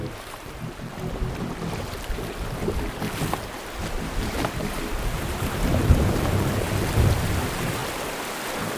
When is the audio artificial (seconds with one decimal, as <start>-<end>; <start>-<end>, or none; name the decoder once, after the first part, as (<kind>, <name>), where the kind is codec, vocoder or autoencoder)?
0.0-0.9 (vocoder, BigVGAN v2); 2.1-7.8